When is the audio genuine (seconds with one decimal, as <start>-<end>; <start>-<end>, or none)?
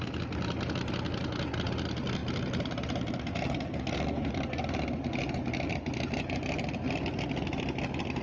0.0-8.2